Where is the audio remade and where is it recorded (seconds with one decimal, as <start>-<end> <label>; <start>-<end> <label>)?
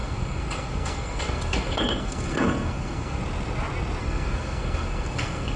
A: 0.0-3.2 remade; 3.2-4.0 recorded; 4.0-5.6 remade